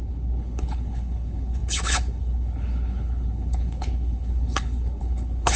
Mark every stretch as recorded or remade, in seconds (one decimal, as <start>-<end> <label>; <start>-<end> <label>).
0.0-5.6 remade